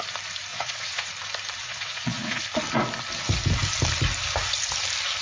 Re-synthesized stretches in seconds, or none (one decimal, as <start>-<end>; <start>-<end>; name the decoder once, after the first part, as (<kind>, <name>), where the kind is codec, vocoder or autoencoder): 0.5-1.1 (vocoder, Vocos); 1.6-2.4